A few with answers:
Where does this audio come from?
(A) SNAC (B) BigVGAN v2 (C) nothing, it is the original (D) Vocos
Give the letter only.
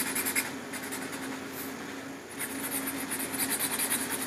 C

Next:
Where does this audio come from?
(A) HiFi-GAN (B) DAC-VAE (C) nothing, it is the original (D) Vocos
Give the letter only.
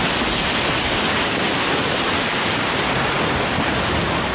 C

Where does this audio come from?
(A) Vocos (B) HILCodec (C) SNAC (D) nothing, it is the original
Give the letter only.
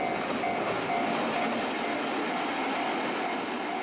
D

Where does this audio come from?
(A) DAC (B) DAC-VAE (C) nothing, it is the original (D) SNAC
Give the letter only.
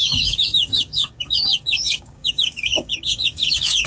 A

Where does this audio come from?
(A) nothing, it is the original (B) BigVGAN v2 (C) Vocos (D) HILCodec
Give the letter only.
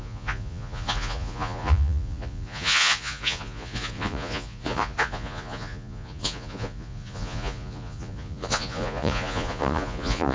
C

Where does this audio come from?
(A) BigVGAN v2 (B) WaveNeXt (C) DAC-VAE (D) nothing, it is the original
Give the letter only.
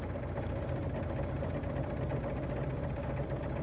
D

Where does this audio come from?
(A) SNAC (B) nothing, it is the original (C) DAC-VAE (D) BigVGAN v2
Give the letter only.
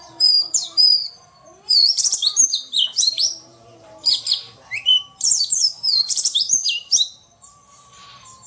D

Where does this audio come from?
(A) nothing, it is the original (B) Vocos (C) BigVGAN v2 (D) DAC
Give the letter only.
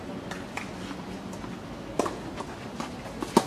A